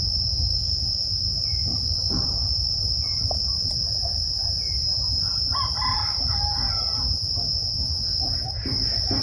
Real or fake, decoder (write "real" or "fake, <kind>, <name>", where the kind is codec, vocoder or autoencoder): fake, vocoder, BigVGAN v2